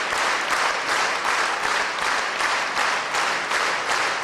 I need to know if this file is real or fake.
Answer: real